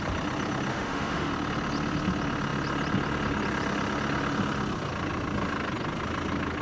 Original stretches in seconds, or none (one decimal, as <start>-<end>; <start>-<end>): 0.0-0.7; 1.3-6.6